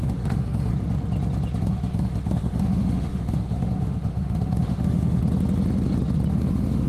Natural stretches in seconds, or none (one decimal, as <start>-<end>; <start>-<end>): 0.7-1.6; 5.2-6.3